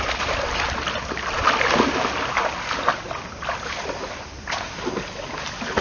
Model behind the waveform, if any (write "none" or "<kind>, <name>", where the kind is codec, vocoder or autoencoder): none